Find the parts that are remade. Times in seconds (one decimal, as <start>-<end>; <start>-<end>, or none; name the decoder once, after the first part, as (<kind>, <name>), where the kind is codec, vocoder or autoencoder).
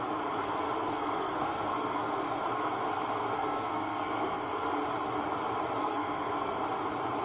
0.4-4.7 (codec, SNAC); 5.8-6.6